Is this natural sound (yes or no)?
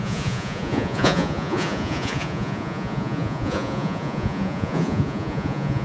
no